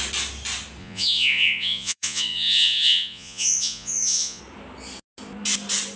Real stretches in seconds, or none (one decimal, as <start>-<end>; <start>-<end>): 0.0-0.8; 4.4-6.0